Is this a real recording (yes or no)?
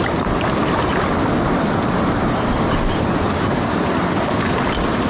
yes